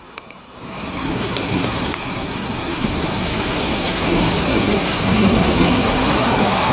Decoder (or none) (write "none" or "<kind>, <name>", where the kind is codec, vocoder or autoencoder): codec, SNAC